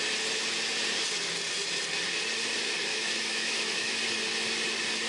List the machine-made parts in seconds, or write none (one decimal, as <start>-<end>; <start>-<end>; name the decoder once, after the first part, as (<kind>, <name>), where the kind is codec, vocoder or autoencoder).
2.9-4.0 (autoencoder, DAC-VAE)